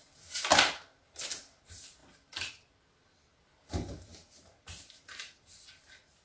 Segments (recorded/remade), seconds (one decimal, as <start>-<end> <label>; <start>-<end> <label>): 0.0-6.2 recorded